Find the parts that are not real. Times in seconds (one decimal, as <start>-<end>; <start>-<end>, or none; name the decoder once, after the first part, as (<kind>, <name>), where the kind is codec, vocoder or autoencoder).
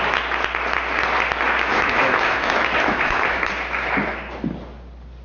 1.7-3.5 (autoencoder, DAC-VAE)